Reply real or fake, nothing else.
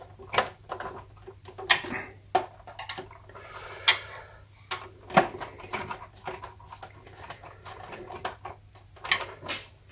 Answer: real